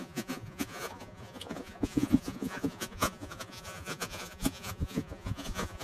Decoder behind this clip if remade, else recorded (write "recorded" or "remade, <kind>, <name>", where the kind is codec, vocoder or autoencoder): remade, vocoder, Vocos